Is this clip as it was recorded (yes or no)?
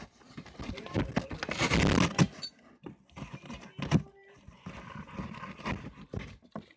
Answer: yes